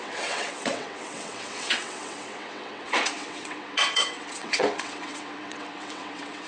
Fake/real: fake